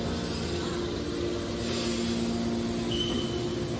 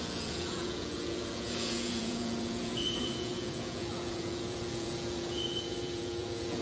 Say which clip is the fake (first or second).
second